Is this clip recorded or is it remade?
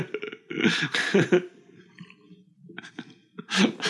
recorded